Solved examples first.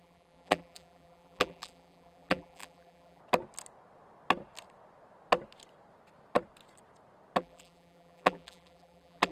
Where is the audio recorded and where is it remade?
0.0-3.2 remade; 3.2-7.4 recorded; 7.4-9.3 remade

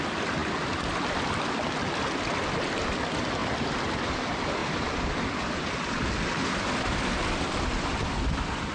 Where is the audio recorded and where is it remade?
0.0-8.7 recorded

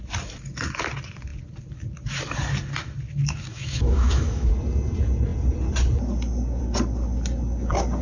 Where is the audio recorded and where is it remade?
0.0-3.5 recorded; 3.5-4.5 remade; 4.5-8.0 recorded

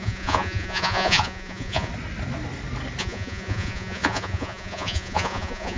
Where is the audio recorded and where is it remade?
0.0-1.9 remade; 1.9-3.0 recorded; 3.0-5.8 remade

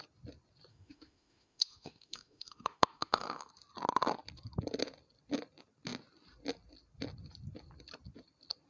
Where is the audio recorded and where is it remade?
0.0-0.7 recorded; 0.7-3.5 remade; 3.5-8.7 recorded

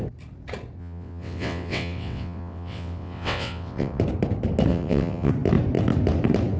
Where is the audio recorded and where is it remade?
0.0-0.8 recorded; 0.8-4.0 remade; 4.0-4.7 recorded; 4.7-5.3 remade; 5.3-6.6 recorded

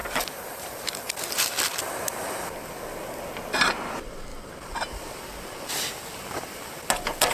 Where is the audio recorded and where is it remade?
0.0-7.3 recorded

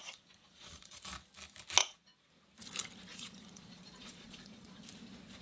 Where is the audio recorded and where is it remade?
0.0-1.0 remade; 1.0-1.8 recorded; 1.8-2.3 remade; 2.3-3.1 recorded; 3.1-4.8 remade; 4.8-5.4 recorded